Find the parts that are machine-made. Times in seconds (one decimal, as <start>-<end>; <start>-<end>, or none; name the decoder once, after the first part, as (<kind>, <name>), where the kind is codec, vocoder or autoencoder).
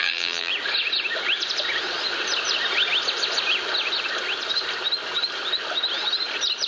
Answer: 0.0-0.5 (vocoder, BigVGAN v2)